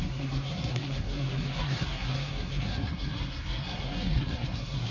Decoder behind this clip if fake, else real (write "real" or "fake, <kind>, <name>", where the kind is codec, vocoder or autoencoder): fake, codec, SNAC